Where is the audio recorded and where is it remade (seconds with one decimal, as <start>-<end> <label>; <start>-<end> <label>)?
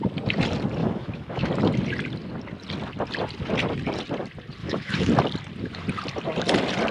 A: 0.0-0.8 recorded; 0.8-1.5 remade; 1.5-4.6 recorded; 4.6-5.1 remade; 5.1-6.9 recorded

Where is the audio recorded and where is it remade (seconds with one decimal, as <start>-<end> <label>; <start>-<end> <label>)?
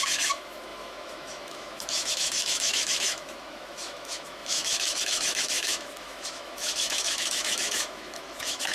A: 0.0-8.7 remade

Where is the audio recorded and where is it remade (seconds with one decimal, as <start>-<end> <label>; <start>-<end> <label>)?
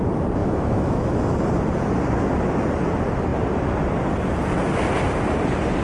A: 0.0-0.4 recorded; 0.4-1.4 remade; 1.4-5.8 recorded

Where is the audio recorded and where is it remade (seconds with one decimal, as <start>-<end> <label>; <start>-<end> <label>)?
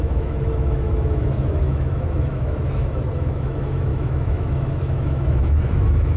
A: 0.0-6.2 remade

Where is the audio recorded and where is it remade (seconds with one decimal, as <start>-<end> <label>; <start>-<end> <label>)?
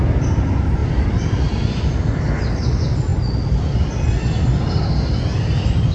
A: 0.0-5.9 recorded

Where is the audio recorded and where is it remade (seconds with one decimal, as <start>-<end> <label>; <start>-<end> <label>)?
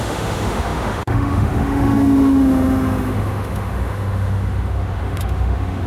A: 0.0-5.9 remade